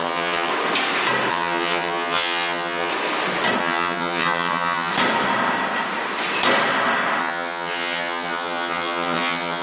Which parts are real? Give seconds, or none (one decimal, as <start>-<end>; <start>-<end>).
0.5-1.3; 2.9-3.6; 4.9-7.2

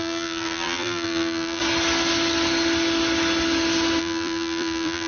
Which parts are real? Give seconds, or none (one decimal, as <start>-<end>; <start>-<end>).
1.6-4.0

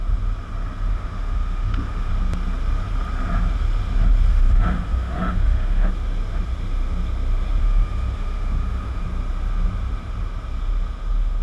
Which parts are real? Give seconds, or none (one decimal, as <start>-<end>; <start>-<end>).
0.0-0.9; 2.1-4.3; 5.9-7.6; 9.0-11.4

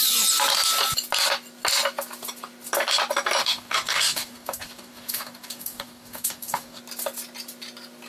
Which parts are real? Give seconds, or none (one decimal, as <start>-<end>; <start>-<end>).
0.0-3.4; 6.8-8.1

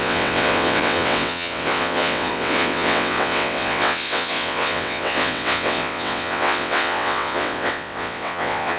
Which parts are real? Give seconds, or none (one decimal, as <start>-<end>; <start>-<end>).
none

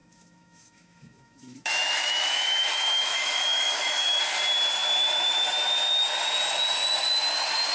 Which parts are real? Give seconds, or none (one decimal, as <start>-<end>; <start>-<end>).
4.2-7.7